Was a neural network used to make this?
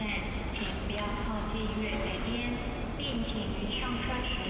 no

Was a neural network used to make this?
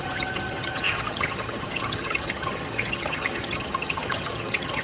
yes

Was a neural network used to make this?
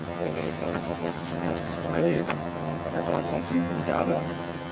yes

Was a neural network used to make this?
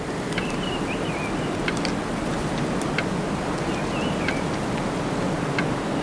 no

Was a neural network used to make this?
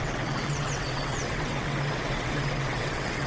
yes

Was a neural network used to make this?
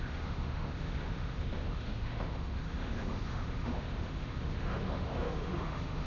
yes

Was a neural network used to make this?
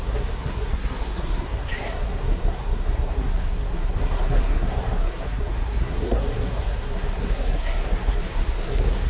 yes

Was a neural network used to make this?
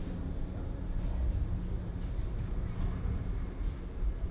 no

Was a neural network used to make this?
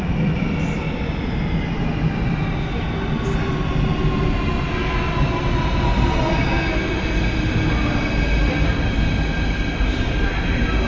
no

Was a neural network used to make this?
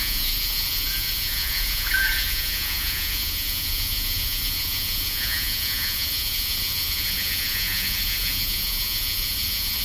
yes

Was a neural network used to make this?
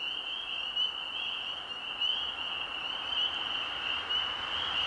no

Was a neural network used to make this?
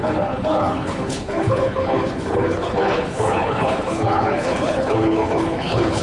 yes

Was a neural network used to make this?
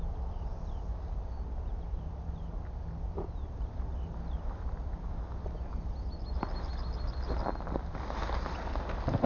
no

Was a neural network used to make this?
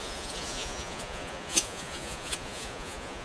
yes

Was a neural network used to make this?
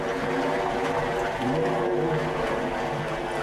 no